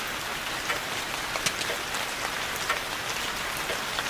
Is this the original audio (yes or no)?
yes